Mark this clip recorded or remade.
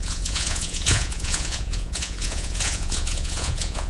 remade